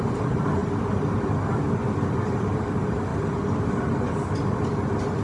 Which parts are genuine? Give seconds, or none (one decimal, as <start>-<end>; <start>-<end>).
0.6-1.9; 3.1-4.6